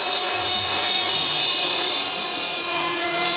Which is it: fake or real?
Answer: fake